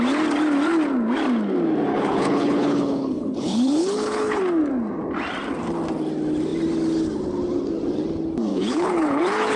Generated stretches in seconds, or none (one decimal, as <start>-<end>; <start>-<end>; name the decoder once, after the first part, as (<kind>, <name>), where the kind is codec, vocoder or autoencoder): 1.9-4.4 (codec, HILCodec); 8.5-9.6